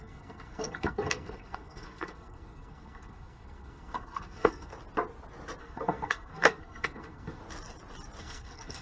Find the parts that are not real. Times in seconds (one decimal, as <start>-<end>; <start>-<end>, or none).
0.0-4.7; 5.6-7.4; 8.2-8.8